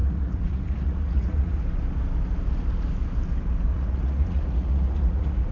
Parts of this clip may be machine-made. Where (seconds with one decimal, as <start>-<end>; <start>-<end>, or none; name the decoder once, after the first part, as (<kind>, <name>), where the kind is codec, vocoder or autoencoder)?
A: 0.0-1.6 (vocoder, Vocos); 3.7-5.5